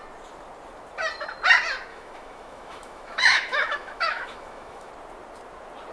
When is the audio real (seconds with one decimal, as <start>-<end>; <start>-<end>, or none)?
0.0-1.9; 4.9-5.9